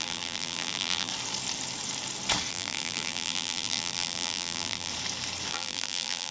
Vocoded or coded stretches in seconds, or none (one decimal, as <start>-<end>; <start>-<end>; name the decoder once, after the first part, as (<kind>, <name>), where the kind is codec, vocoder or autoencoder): 0.0-1.1 (vocoder, BigVGAN v2); 2.5-4.9; 5.5-6.3